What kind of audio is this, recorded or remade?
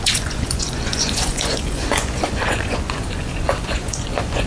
remade